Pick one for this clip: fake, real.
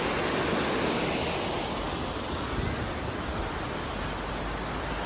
real